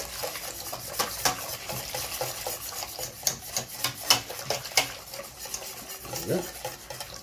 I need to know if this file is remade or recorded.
recorded